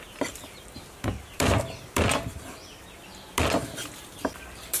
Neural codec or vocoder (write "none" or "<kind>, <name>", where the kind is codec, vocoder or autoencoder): none